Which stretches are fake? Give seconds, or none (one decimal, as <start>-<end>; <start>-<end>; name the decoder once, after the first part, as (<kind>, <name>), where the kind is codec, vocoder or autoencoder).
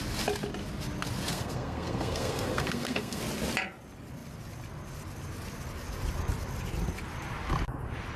1.3-3.2 (codec, SNAC)